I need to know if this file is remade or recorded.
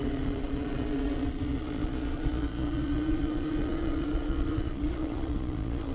remade